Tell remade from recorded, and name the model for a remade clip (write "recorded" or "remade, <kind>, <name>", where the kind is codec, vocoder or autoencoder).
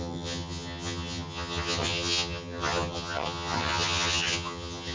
remade, vocoder, HiFi-GAN